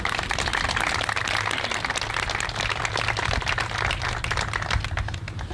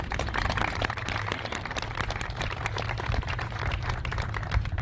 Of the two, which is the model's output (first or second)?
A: second